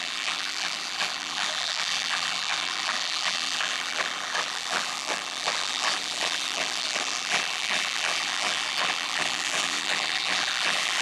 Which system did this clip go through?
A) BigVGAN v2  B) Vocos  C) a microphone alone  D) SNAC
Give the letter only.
A